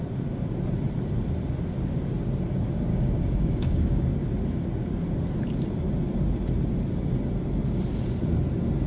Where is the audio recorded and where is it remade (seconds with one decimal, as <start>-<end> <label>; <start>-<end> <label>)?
0.0-2.9 recorded; 2.9-4.1 remade; 4.1-8.9 recorded